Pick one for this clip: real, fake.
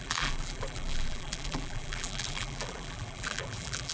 fake